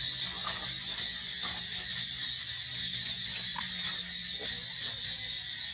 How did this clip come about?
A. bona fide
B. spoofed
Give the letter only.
A